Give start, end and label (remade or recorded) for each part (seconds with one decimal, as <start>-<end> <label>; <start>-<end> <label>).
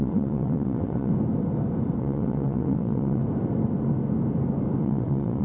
0.0-1.1 remade; 1.1-2.0 recorded; 2.0-3.2 remade; 3.2-4.8 recorded; 4.8-5.4 remade